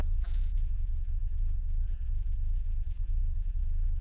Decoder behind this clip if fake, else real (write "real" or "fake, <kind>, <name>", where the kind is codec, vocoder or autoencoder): fake, vocoder, BigVGAN v2